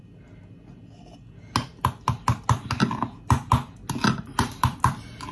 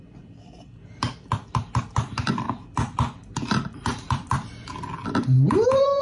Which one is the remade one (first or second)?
second